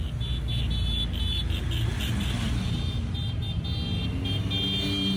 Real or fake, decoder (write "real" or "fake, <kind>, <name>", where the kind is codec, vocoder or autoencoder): real